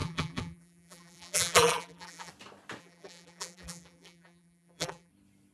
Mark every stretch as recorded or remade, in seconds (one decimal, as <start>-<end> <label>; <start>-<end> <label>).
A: 0.0-2.3 remade; 2.3-2.8 recorded; 2.8-5.1 remade; 5.1-5.5 recorded